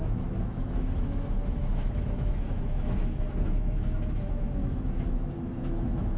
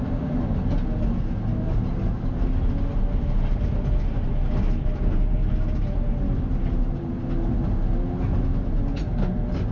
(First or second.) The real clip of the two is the second